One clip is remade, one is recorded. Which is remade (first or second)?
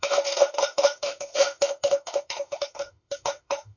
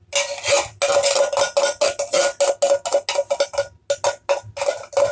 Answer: first